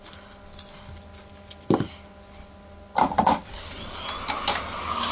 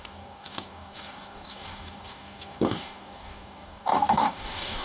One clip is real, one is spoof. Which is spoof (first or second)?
second